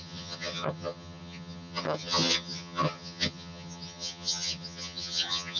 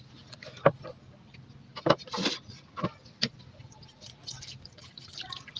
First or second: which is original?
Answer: second